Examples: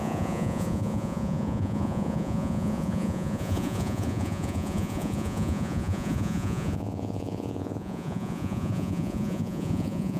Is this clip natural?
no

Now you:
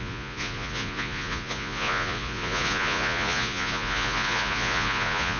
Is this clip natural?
no